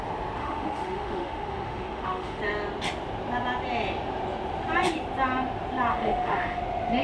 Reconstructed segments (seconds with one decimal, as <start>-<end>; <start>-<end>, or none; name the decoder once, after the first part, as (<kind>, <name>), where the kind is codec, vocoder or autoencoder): 0.4-2.4 (autoencoder, DAC-VAE); 5.9-6.6